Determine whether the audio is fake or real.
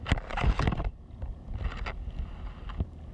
real